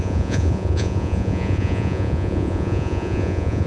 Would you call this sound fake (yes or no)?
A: yes